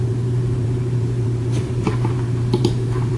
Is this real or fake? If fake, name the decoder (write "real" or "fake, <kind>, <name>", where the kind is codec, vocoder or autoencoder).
fake, vocoder, BigVGAN v2